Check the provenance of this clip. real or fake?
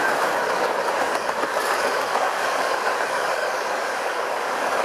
fake